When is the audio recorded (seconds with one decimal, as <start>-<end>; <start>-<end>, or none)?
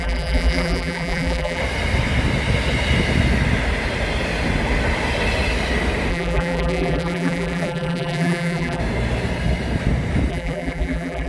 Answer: 1.6-6.1; 8.8-10.3